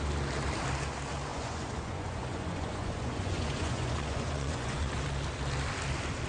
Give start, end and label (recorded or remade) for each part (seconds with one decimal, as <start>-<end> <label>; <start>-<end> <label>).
0.0-1.3 recorded; 1.3-4.9 remade; 4.9-6.3 recorded